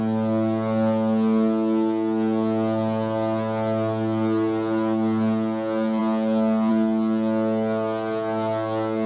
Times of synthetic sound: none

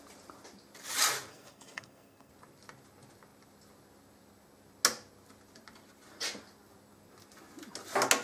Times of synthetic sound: 1.3-2.3 (codec, SNAC)

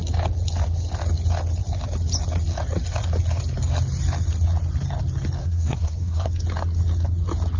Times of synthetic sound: 5.4-6.3 (codec, SNAC)

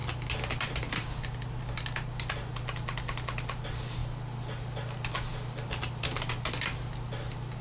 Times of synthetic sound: none